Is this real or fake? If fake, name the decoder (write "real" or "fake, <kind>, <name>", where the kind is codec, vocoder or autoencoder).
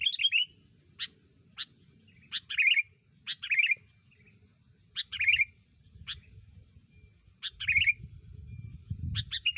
real